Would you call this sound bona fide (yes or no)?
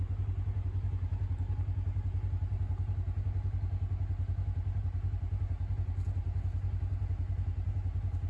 yes